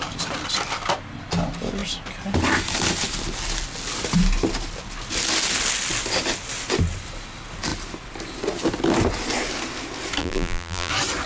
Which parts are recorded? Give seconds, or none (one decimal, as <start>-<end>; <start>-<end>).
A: 0.0-10.2; 10.9-11.3